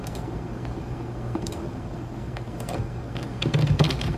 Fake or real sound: fake